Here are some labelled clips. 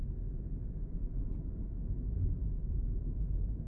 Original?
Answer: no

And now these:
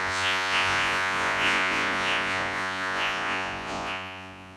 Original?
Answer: no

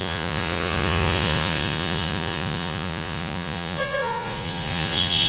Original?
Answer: no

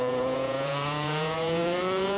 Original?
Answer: no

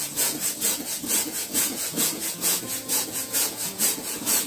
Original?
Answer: no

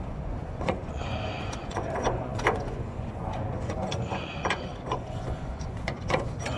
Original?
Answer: no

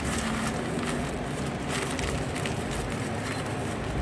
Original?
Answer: yes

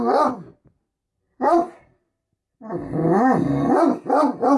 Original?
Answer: yes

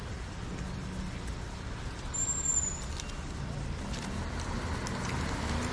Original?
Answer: yes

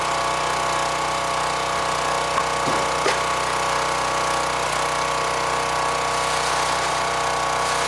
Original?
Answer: yes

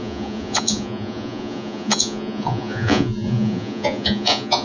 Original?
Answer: no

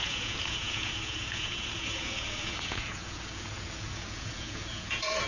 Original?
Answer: no